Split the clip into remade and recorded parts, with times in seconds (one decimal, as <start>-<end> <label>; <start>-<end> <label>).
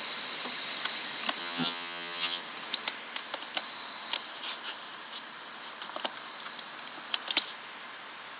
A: 0.0-1.4 recorded; 1.4-2.4 remade; 2.4-8.4 recorded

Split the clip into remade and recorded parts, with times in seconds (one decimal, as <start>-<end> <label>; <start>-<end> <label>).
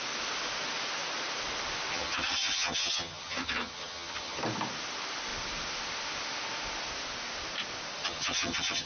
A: 0.0-1.9 recorded; 1.9-4.4 remade; 4.4-8.0 recorded; 8.0-8.9 remade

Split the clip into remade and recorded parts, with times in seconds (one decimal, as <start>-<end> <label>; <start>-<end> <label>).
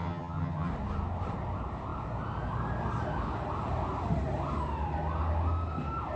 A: 0.0-0.7 remade; 0.7-6.2 recorded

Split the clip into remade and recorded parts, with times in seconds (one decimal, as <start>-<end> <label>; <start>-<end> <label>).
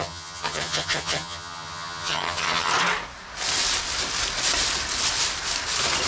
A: 0.0-2.7 remade; 2.7-6.1 recorded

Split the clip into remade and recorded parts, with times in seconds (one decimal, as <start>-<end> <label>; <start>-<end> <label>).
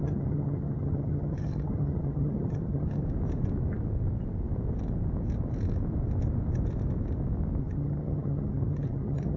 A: 0.0-3.0 remade; 3.0-7.6 recorded; 7.6-9.4 remade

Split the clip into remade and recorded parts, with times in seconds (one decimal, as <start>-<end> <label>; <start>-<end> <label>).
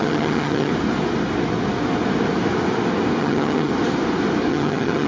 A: 0.0-0.7 remade; 0.7-3.2 recorded; 3.2-3.7 remade; 3.7-4.5 recorded; 4.5-5.1 remade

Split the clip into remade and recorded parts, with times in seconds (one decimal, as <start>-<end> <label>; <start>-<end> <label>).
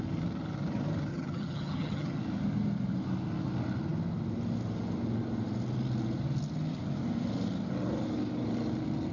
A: 0.0-1.1 recorded; 1.1-2.2 remade; 2.2-9.1 recorded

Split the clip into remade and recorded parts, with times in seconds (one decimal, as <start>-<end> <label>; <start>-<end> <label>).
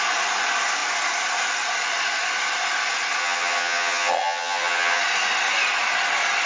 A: 0.0-3.2 recorded; 3.2-5.0 remade; 5.0-6.5 recorded